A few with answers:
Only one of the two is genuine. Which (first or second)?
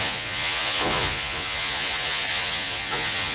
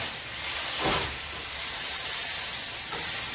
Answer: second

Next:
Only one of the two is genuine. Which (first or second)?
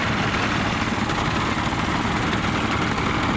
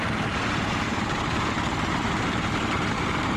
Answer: first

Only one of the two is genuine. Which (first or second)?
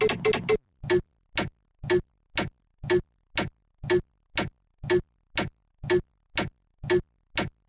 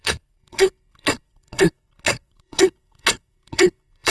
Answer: first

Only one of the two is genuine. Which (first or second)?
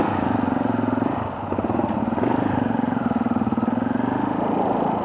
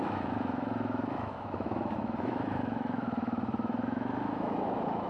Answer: first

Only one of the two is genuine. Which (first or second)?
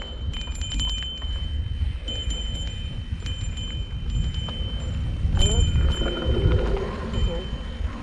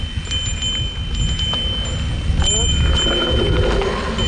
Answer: second